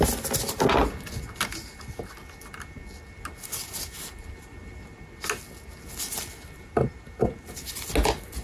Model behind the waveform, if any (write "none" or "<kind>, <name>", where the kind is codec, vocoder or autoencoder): none